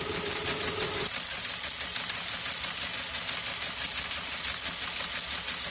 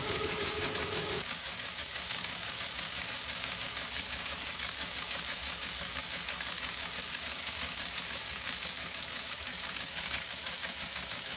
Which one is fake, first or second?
second